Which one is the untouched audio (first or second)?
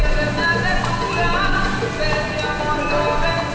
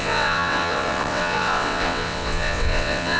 first